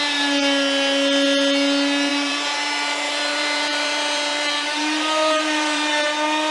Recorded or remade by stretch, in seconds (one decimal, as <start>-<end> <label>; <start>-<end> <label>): 0.0-2.1 recorded; 2.1-5.9 remade; 5.9-6.5 recorded